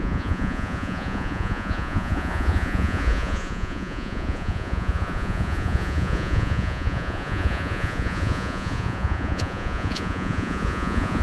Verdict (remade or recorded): remade